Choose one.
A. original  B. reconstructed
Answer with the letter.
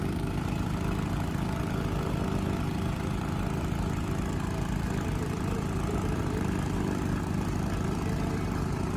A